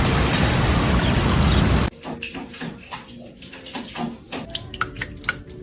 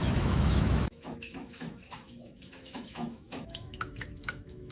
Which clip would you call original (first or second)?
first